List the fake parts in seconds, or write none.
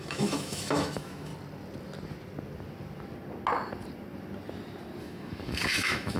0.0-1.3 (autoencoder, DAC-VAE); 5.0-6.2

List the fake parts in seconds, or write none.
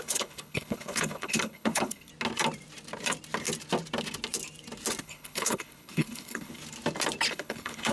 0.0-2.1 (codec, HILCodec); 5.0-6.6; 7.3-7.9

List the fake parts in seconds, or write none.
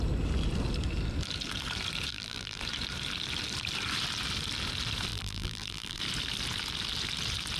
2.1-2.6 (vocoder, BigVGAN v2); 5.1-6.0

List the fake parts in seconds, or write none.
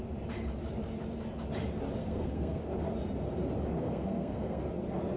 2.0-2.6 (codec, SNAC); 3.8-4.6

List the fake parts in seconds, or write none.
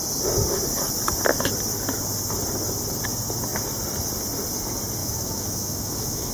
5.0-6.3 (autoencoder, DAC-VAE)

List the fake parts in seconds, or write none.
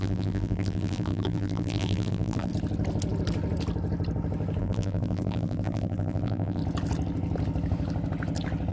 0.0-2.5 (vocoder, BigVGAN v2); 4.6-6.6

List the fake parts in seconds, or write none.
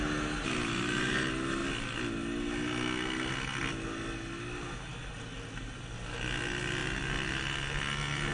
none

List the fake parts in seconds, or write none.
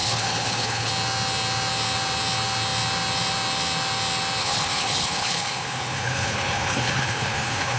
0.0-0.9 (codec, HILCodec); 4.4-7.8